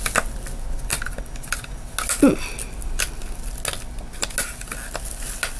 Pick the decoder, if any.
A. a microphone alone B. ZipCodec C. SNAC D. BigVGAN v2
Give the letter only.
A